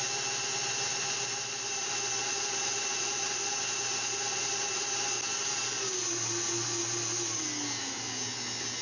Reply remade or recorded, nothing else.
recorded